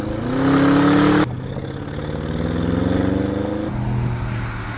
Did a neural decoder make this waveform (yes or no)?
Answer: no